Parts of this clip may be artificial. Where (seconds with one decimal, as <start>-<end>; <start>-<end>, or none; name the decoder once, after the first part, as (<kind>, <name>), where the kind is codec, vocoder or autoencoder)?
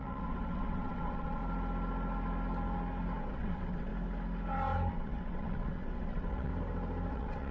0.0-1.4 (vocoder, WaveNeXt); 3.2-3.9; 4.9-6.5; 7.1-7.5